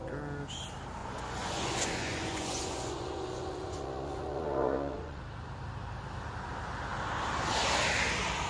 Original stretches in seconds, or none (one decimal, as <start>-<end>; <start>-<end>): 0.0-1.0; 5.2-8.5